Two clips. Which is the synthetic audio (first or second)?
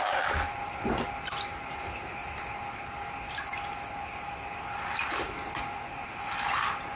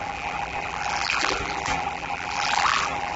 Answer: second